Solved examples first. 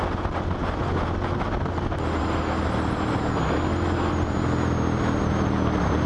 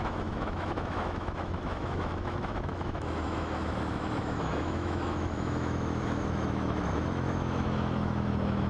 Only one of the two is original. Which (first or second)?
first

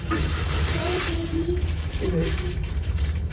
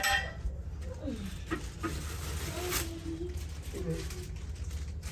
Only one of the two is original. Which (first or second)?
second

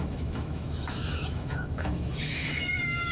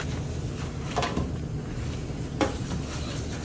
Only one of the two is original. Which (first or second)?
second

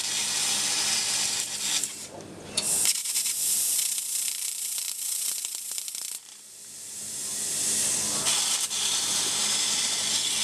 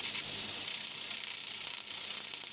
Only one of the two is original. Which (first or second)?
second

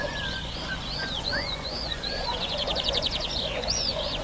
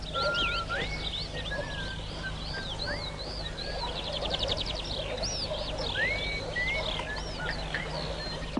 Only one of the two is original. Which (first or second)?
second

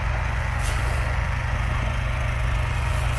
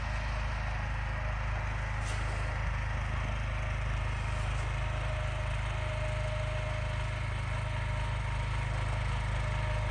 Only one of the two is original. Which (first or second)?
second